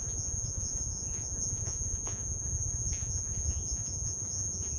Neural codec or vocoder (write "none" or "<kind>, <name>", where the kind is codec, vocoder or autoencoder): vocoder, Vocos